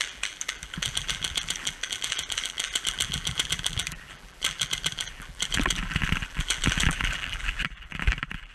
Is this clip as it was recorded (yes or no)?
no